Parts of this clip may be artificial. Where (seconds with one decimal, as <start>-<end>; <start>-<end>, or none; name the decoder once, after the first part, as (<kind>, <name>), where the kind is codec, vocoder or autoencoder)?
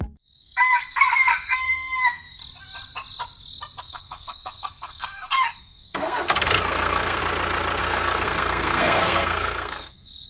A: 0.0-2.4 (codec, SNAC); 3.8-7.2; 7.8-10.3